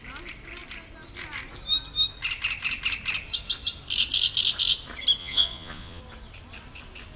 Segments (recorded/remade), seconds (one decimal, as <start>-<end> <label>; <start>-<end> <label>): 0.0-5.2 recorded; 5.2-6.0 remade; 6.0-7.2 recorded